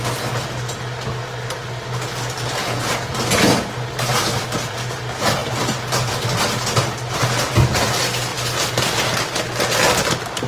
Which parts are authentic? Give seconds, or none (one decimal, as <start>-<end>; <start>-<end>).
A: 0.0-2.6; 3.1-10.5